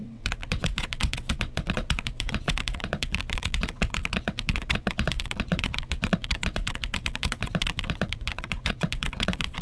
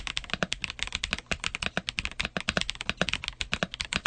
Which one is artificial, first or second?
first